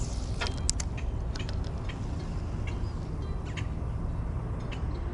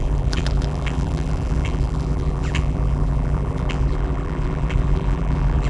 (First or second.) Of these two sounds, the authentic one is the first